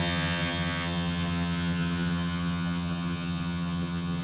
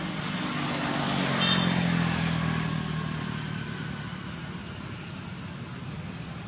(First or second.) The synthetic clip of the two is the first